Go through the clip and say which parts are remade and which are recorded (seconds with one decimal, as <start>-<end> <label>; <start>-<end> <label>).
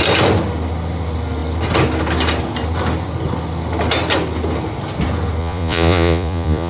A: 0.0-5.4 recorded; 5.4-6.7 remade